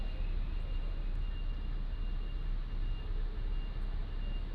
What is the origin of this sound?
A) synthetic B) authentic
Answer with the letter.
B